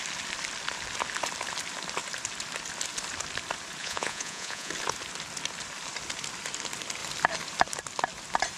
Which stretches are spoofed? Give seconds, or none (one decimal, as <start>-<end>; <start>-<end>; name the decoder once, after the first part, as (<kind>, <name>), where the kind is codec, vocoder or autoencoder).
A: 3.8-4.7 (vocoder, Vocos)